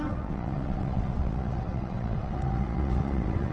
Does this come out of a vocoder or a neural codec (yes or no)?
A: yes